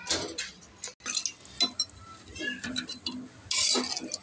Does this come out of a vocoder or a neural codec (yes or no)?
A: no